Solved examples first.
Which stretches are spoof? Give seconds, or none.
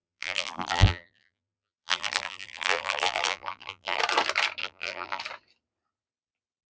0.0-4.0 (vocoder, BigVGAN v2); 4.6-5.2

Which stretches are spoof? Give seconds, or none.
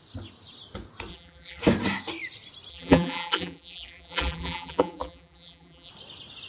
1.1-1.6 (vocoder, BigVGAN v2); 2.7-5.9